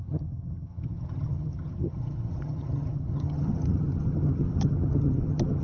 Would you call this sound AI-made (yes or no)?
yes